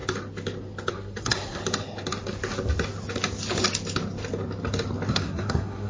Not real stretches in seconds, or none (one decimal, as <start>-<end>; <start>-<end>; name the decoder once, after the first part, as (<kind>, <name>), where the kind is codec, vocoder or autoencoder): 0.9-1.6 (codec, SNAC); 5.1-5.9